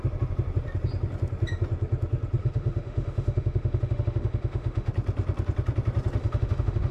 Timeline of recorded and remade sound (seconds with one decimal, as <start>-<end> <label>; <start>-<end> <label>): 0.0-2.4 recorded; 2.4-4.9 remade; 4.9-6.2 recorded; 6.2-6.9 remade